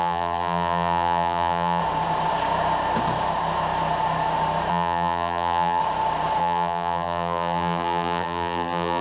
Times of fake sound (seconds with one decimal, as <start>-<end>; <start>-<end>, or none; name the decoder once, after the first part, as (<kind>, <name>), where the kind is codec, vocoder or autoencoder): 0.0-1.8 (vocoder, BigVGAN v2); 4.7-5.8; 6.4-9.0